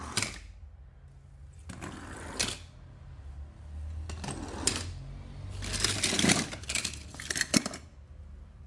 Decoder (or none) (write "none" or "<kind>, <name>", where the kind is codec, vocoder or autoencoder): none